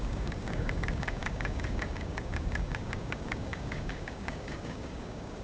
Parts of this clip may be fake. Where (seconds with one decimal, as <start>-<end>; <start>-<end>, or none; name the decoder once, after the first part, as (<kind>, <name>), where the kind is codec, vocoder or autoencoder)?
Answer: 0.0-5.4 (codec, DAC)